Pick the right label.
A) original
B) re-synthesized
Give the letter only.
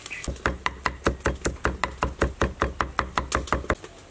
A